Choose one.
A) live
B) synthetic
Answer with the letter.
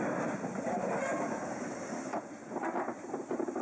A